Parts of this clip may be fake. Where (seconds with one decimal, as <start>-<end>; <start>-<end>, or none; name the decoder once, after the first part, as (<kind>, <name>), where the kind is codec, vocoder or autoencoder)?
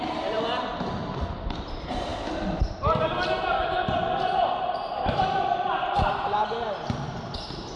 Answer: none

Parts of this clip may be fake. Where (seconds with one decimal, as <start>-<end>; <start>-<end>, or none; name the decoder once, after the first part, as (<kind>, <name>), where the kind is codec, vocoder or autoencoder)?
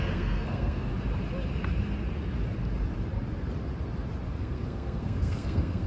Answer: 0.0-0.9 (codec, SNAC); 4.4-5.9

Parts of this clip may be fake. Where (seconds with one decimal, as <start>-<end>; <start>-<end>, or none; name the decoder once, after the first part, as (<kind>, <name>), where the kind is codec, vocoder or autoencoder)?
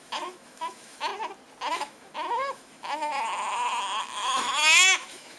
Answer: 0.0-1.1 (autoencoder, DAC-VAE); 1.7-3.1; 4.0-5.4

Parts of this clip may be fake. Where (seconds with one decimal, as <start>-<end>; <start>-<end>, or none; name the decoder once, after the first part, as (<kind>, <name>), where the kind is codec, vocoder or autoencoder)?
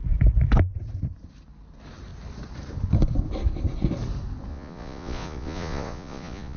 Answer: 4.5-6.6 (vocoder, Vocos)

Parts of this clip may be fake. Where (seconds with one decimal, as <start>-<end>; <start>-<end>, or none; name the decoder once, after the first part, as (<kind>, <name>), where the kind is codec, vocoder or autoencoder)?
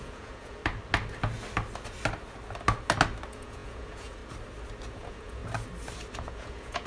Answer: 0.0-0.6 (vocoder, Vocos); 3.3-4.2; 4.9-5.4; 6.2-6.9